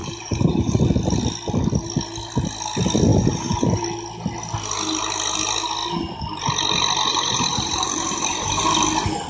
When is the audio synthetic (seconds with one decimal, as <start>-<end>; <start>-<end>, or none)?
0.0-0.8; 3.1-3.8; 7.1-8.6